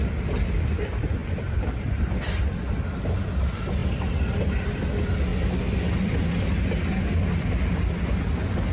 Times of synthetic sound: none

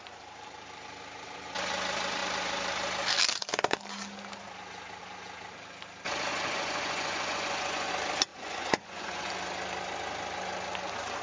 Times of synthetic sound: 6.3-7.9; 8.3-9.3

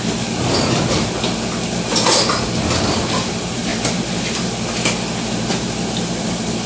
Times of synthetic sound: none